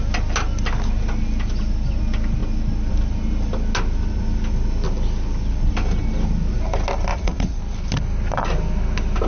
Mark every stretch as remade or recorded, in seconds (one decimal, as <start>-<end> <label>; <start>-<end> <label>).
0.0-7.1 recorded; 7.1-7.6 remade; 7.6-9.3 recorded